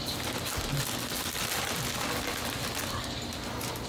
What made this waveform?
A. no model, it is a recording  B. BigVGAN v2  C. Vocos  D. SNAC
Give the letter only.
A